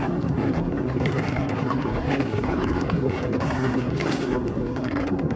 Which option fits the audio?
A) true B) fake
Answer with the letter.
B